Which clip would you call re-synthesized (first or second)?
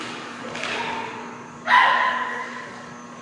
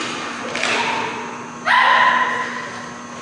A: first